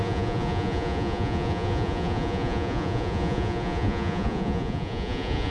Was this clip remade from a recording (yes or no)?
yes